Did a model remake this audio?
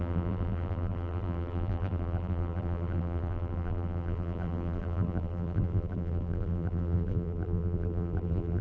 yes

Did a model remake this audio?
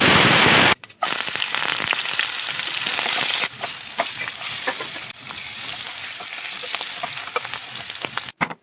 no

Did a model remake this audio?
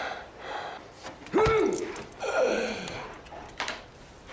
no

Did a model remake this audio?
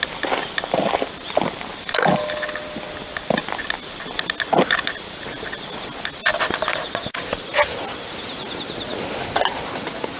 no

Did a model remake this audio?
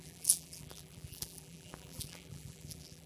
yes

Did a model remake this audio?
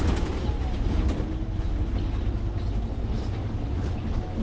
no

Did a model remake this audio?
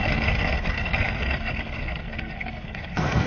yes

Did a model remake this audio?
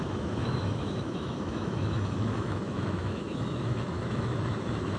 yes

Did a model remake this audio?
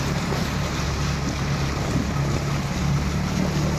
no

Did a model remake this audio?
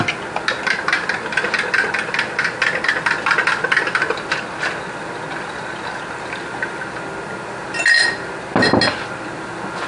no